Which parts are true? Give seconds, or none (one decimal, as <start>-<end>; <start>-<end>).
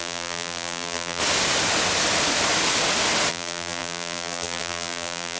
1.2-3.3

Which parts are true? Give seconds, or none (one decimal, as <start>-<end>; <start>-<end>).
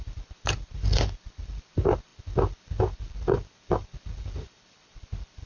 none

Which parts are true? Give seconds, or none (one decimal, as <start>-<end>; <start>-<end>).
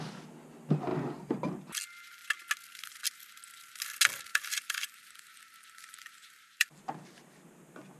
0.0-0.9; 1.7-4.3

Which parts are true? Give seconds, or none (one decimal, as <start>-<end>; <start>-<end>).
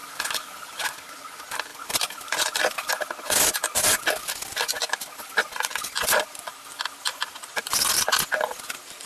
0.8-1.7; 2.9-3.6; 6.9-9.1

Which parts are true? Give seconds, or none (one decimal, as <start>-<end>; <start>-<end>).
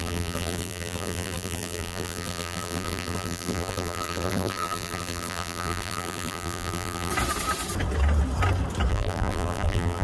7.1-8.9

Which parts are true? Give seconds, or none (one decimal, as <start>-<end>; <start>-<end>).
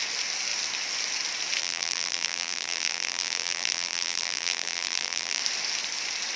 0.0-1.6; 5.4-6.4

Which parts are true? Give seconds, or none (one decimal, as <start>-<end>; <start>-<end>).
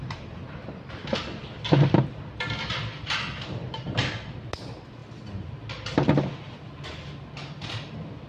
0.0-1.0; 4.5-8.3